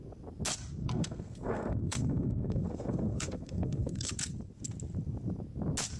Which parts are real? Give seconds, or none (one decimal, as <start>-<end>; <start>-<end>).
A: 0.0-0.8; 4.1-6.0